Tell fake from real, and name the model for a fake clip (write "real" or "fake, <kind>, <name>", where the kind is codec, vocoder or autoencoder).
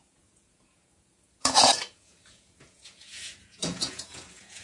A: fake, vocoder, Vocos